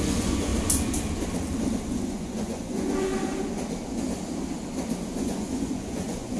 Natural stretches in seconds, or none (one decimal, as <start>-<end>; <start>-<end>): 0.5-1.9; 3.1-5.2